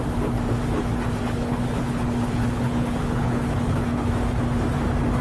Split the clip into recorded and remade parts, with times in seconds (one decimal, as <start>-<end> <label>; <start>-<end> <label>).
0.0-1.2 recorded; 1.2-4.1 remade; 4.1-5.2 recorded